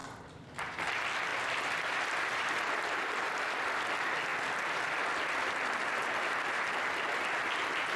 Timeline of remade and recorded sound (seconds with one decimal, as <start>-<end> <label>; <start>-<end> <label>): 0.0-1.3 recorded; 1.3-2.6 remade; 2.6-8.0 recorded